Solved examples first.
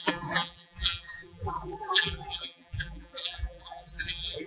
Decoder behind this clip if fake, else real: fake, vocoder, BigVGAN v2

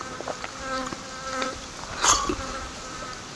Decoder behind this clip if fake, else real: real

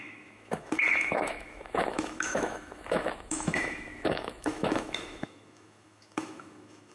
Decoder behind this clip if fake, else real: fake, autoencoder, DAC-VAE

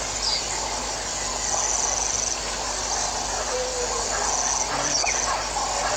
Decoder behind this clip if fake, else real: real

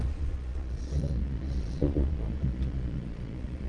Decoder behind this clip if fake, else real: fake, vocoder, Vocos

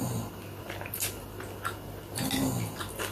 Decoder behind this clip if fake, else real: real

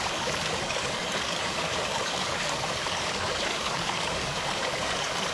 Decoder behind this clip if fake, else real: fake, codec, DAC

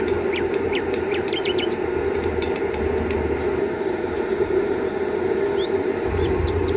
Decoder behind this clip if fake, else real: fake, vocoder, BigVGAN v2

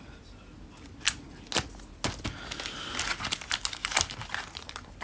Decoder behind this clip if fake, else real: real